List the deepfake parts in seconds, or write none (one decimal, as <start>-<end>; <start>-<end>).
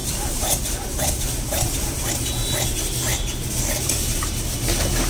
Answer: 0.0-2.1; 3.1-4.2